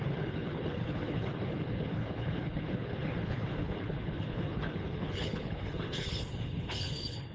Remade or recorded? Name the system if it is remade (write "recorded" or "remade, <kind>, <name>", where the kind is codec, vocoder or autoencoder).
remade, codec, HILCodec